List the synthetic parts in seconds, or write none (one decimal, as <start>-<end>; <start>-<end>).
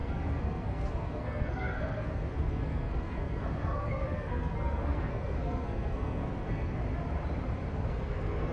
0.0-6.8; 7.7-8.5